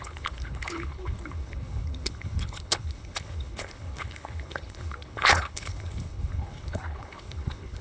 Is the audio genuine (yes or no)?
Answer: no